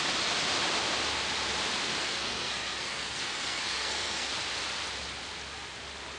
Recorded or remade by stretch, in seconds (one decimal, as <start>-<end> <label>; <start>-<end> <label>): 0.0-2.0 recorded; 2.0-4.3 remade; 4.3-6.2 recorded